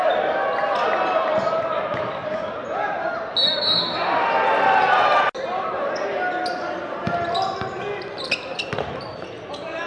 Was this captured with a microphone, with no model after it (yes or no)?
yes